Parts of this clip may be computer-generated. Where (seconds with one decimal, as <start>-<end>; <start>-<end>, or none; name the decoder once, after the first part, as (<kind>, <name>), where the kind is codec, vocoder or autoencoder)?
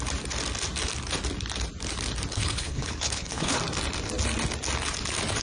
2.3-3.6 (codec, HILCodec)